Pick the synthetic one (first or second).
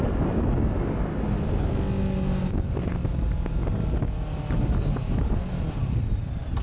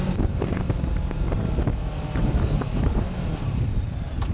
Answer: second